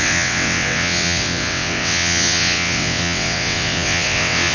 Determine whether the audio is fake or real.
fake